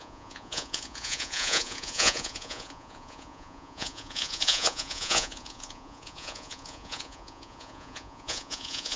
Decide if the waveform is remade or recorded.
remade